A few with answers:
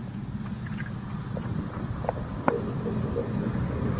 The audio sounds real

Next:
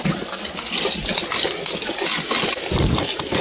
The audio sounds real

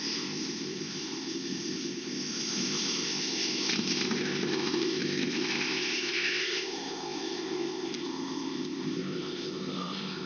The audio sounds fake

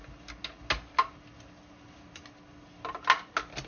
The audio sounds real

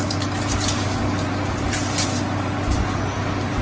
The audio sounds real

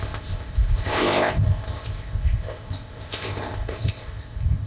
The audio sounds fake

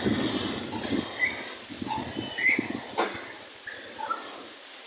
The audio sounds real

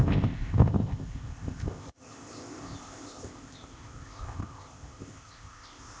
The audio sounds fake